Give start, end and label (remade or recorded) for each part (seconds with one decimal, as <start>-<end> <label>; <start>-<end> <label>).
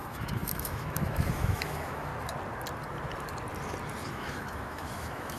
0.0-2.1 remade; 2.1-4.1 recorded; 4.1-5.4 remade